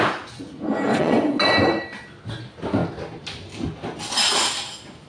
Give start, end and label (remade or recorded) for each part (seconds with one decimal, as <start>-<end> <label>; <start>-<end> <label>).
0.0-0.9 recorded; 0.9-1.4 remade; 1.4-5.1 recorded